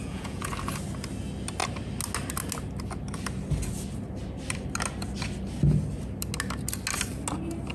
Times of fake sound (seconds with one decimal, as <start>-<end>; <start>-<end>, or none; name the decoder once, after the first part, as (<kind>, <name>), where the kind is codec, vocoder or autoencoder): 0.0-0.5 (vocoder, Vocos)